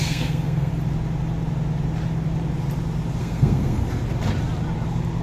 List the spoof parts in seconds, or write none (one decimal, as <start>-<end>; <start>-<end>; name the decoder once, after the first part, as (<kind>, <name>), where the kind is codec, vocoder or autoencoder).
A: 0.0-0.7 (codec, SNAC); 3.2-3.8